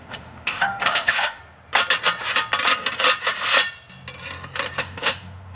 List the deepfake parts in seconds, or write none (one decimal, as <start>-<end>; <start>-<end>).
0.0-1.4; 4.8-5.6